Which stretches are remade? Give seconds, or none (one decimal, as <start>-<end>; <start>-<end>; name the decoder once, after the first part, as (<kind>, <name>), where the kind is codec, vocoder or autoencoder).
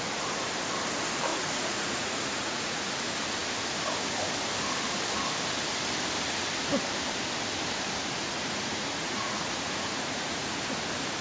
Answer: 1.3-2.9 (vocoder, Vocos); 8.2-10.5